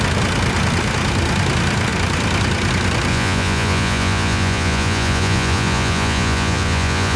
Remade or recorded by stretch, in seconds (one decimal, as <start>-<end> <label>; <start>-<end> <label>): 0.0-3.1 recorded; 3.1-7.2 remade